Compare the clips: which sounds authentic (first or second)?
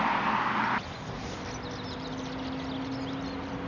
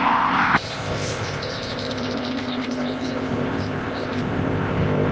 first